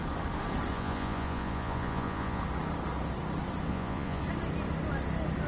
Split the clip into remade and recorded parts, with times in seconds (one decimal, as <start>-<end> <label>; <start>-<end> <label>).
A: 0.0-0.7 recorded; 0.7-2.4 remade; 2.4-3.7 recorded; 3.7-4.2 remade; 4.2-5.5 recorded